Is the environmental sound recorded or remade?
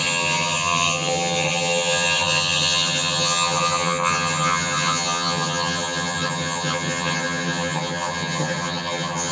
remade